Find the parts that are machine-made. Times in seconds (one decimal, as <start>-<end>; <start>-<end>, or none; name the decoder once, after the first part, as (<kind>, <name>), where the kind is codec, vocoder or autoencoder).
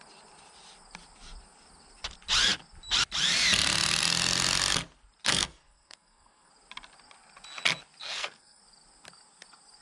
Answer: 5.3-6.5 (codec, SNAC); 8.0-8.6